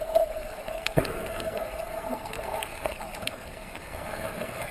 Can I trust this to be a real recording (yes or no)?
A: no